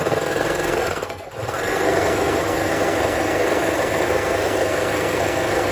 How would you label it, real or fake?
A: fake